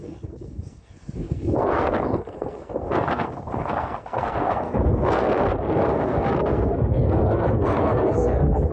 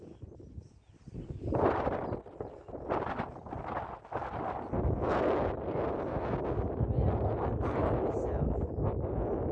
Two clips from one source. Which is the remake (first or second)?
first